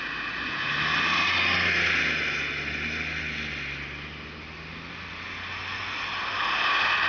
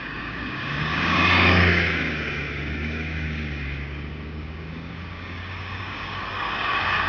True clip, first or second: first